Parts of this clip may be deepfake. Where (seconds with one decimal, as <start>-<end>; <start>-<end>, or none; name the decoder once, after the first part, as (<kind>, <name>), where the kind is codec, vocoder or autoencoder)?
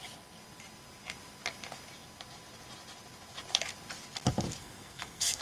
4.6-5.4 (codec, SNAC)